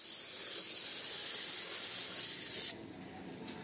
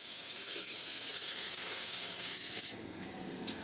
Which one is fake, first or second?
second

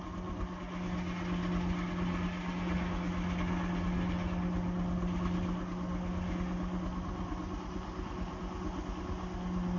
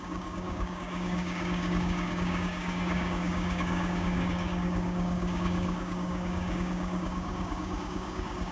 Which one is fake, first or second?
second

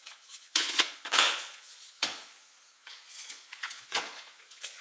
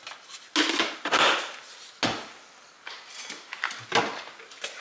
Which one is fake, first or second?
first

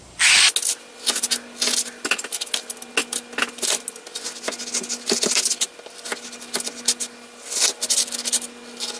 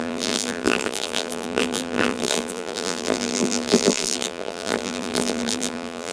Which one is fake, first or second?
second